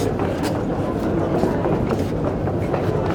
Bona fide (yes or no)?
yes